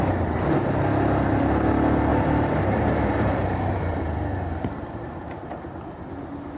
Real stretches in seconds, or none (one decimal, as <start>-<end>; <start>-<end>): 0.0-2.1; 4.0-6.6